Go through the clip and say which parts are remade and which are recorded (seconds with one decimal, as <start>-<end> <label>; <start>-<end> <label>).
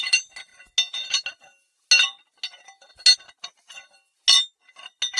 0.0-5.2 recorded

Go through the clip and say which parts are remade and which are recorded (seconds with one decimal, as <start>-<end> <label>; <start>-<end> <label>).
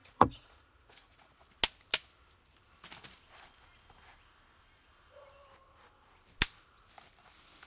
0.0-1.3 remade; 1.3-7.7 recorded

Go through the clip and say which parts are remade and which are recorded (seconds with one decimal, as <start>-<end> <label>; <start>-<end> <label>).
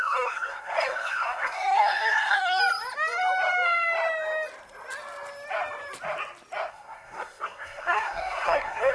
0.0-2.6 remade; 2.6-6.7 recorded; 6.7-8.9 remade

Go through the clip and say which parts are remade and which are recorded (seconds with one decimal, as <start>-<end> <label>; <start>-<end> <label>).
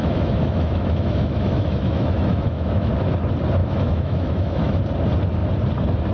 0.0-2.9 remade; 2.9-3.6 recorded; 3.6-4.8 remade; 4.8-6.1 recorded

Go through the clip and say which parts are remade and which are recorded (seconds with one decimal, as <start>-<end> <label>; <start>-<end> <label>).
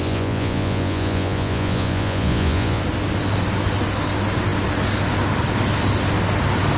0.0-2.8 remade; 2.8-6.8 recorded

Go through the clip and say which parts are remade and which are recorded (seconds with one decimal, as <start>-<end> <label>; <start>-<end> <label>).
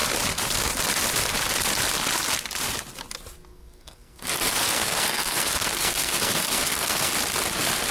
0.0-3.5 recorded; 3.5-7.1 remade; 7.1-7.9 recorded